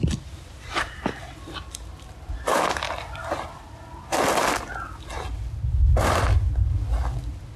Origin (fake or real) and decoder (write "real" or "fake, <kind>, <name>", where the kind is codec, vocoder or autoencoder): real